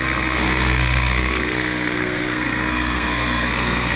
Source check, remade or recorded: remade